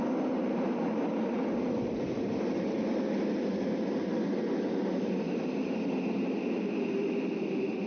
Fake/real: real